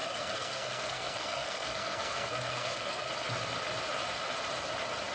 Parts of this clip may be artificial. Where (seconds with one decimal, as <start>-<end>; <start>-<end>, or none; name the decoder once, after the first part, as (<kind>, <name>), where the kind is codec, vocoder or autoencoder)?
0.0-3.1 (codec, SNAC)